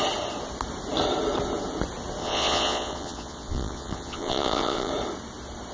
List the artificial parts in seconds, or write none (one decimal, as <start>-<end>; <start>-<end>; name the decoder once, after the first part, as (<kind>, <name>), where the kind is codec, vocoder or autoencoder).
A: 2.2-4.9 (vocoder, Vocos)